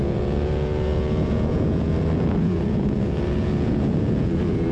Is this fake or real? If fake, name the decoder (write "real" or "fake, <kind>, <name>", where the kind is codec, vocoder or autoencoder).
fake, vocoder, Vocos